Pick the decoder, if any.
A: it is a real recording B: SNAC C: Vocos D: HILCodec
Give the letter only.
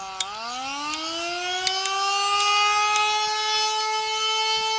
A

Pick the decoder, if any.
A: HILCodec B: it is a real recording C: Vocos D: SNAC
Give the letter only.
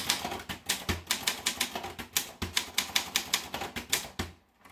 B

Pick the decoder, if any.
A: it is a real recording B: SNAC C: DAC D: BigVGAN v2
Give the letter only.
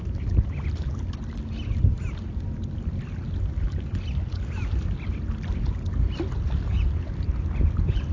A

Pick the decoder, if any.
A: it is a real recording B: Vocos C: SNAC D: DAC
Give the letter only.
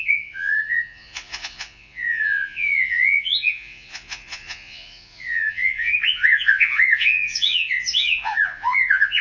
B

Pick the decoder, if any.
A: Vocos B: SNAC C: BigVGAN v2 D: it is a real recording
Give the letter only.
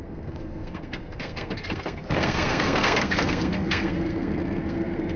B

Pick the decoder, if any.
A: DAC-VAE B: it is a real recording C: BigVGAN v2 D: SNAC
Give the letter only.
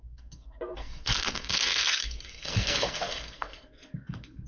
D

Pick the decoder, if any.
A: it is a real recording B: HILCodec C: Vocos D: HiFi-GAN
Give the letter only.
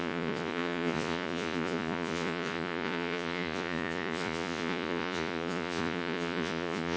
C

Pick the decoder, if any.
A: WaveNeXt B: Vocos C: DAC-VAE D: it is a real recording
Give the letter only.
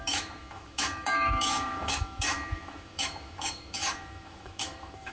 C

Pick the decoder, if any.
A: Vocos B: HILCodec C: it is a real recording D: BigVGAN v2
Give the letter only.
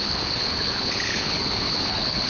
B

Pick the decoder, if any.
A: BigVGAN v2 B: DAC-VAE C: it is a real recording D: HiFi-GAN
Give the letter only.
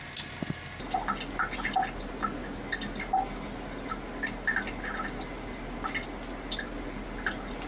C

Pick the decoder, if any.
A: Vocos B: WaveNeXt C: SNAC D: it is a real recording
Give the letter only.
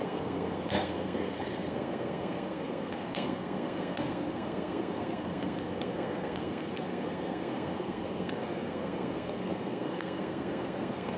C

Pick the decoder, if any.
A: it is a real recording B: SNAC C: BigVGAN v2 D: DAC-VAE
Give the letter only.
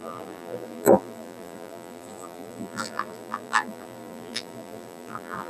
C